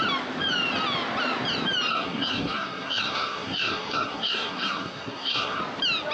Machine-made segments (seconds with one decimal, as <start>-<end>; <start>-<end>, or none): 1.9-5.6